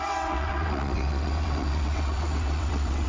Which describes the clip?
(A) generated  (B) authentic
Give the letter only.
A